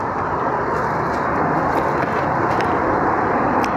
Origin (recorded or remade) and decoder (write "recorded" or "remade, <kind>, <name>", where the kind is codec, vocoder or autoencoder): remade, vocoder, BigVGAN v2